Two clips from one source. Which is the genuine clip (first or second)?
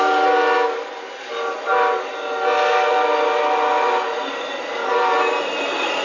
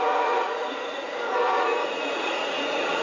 first